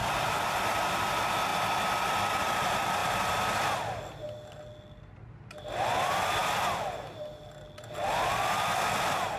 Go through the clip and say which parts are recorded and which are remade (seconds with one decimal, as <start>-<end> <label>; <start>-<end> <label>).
0.0-9.4 recorded